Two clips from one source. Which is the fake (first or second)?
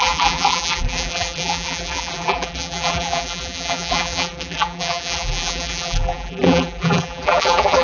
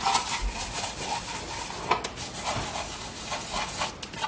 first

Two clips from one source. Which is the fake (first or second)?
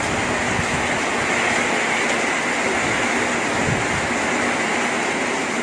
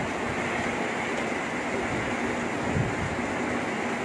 second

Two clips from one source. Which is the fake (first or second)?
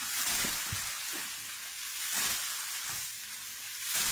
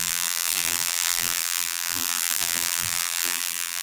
second